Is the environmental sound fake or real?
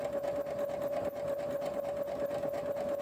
real